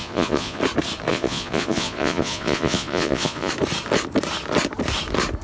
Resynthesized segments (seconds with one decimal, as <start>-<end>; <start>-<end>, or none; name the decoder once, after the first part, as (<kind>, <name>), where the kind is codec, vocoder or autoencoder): 0.0-0.6 (vocoder, Vocos); 1.1-3.5